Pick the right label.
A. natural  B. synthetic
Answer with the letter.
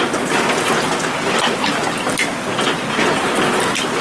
A